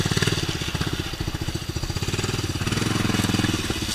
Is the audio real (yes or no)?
yes